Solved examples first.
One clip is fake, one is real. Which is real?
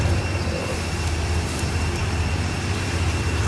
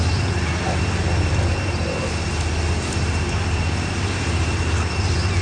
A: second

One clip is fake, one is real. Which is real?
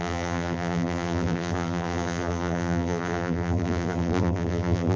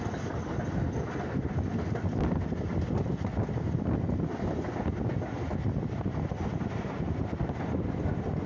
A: second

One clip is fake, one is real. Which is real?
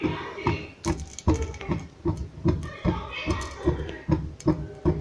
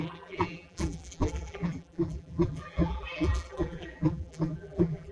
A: first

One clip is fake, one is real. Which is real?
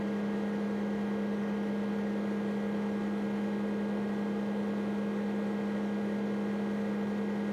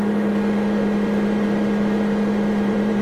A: first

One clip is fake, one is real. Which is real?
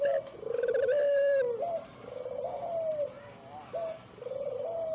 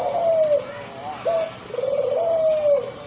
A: second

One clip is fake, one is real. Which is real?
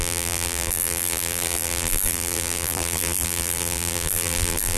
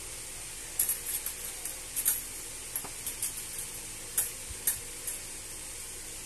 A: second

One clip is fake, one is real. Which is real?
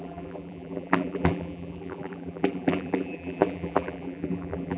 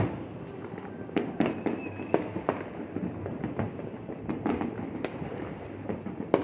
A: second